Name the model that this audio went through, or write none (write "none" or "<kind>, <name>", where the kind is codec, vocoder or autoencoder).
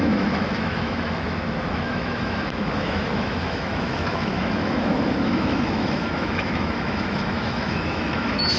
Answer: autoencoder, DAC-VAE